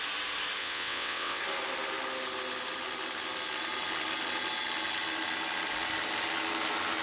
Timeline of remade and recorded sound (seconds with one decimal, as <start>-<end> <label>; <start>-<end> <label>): 0.0-0.6 recorded; 0.6-1.4 remade; 1.4-7.0 recorded

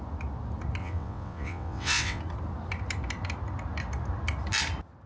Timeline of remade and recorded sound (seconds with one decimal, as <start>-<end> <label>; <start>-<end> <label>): 0.0-0.8 recorded; 0.8-2.2 remade; 2.2-5.1 recorded

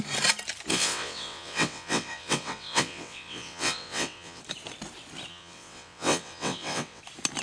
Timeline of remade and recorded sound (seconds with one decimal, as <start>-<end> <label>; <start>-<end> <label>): 0.0-0.7 recorded; 0.7-4.4 remade; 4.4-5.3 recorded; 5.3-7.0 remade; 7.0-7.4 recorded